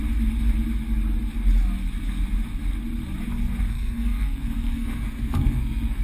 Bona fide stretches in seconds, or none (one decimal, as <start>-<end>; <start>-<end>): 0.0-3.7